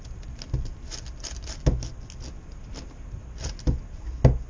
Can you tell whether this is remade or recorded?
recorded